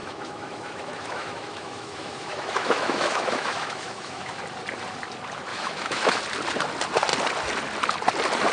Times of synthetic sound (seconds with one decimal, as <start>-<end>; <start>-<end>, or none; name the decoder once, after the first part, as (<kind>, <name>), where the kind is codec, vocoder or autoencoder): 0.0-4.4 (autoencoder, DAC-VAE); 5.5-6.2